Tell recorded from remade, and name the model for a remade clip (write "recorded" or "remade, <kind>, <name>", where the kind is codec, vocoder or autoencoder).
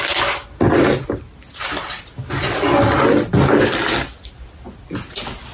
recorded